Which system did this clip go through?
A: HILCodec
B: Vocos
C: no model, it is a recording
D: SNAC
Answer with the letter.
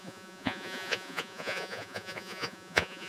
B